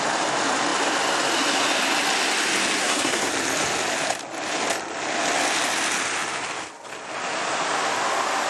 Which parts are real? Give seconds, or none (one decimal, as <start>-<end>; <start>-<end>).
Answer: 0.0-2.8; 3.3-8.5